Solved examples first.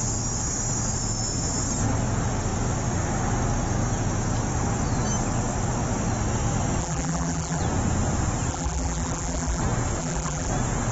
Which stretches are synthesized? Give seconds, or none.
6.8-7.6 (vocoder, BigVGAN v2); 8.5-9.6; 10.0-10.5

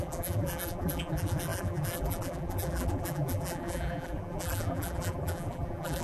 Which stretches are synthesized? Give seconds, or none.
0.0-6.0 (vocoder, BigVGAN v2)